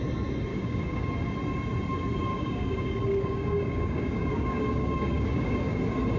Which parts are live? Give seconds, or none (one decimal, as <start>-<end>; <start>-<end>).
0.0-0.5; 1.1-2.3; 5.8-6.2